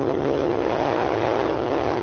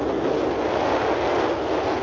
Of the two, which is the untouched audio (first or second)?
second